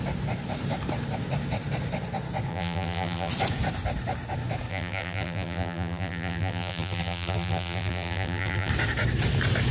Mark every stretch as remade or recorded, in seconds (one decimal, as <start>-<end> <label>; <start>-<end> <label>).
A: 0.0-2.5 recorded; 2.5-3.3 remade; 3.3-4.7 recorded; 4.7-8.7 remade; 8.7-9.7 recorded